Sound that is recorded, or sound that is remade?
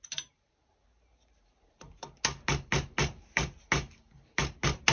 recorded